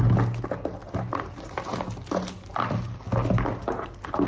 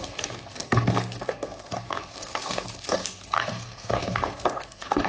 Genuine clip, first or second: first